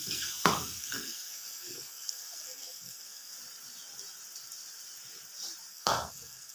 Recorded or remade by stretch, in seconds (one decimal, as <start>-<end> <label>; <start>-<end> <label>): 0.0-3.3 remade; 3.3-5.7 recorded; 5.7-6.5 remade